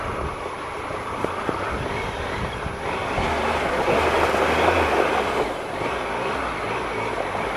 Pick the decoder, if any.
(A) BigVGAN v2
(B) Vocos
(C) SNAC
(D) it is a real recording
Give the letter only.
D